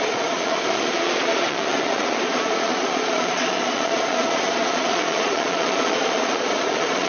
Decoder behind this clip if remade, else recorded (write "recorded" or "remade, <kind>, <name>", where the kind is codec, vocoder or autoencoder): remade, vocoder, Vocos